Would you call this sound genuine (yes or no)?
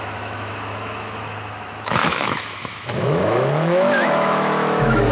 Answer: no